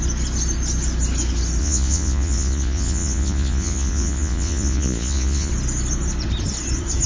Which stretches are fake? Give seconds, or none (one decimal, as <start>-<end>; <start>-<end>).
1.6-5.5